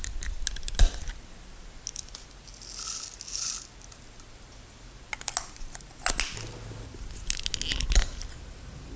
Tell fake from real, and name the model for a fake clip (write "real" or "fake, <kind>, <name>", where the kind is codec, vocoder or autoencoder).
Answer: real